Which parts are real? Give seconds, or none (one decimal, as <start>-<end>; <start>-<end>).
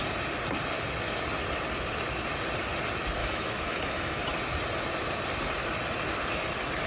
0.0-3.2; 4.2-6.9